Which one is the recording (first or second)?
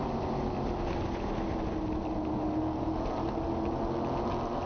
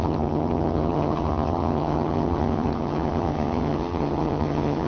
first